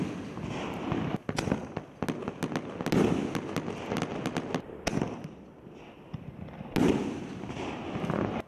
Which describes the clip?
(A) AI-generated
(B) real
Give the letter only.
B